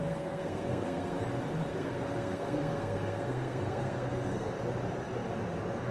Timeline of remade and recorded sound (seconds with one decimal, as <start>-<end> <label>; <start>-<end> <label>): 0.0-1.2 remade; 1.2-1.7 recorded; 1.7-4.5 remade; 4.5-5.9 recorded